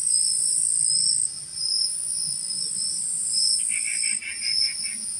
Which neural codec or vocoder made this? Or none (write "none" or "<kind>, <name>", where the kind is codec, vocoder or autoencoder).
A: none